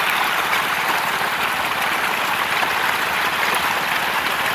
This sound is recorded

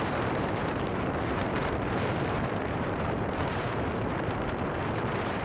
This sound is remade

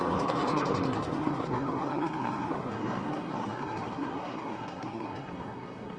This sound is remade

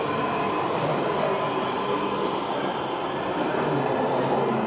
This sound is recorded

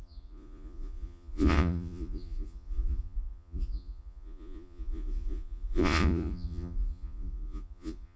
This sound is remade